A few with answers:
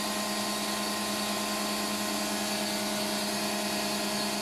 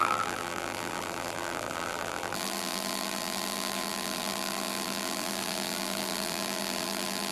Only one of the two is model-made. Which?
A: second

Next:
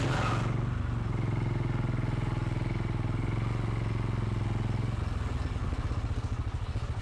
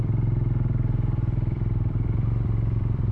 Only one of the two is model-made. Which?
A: second